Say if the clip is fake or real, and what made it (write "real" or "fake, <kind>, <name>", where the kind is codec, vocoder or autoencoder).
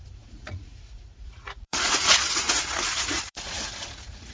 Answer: fake, vocoder, Vocos